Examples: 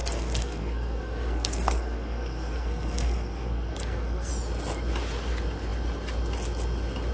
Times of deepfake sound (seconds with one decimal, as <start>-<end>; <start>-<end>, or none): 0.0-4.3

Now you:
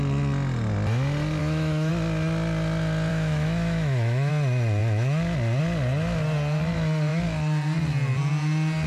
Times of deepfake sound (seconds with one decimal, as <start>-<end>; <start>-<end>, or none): 1.4-1.9; 3.1-4.3

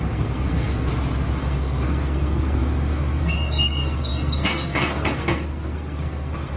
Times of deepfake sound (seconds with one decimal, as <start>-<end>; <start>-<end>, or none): 0.0-0.9; 1.4-6.6

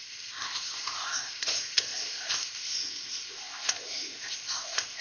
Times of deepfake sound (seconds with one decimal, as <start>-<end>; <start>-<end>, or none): 0.0-5.0

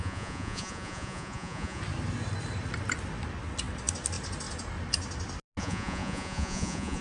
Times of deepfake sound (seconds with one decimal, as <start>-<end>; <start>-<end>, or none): 0.0-1.8; 5.6-7.0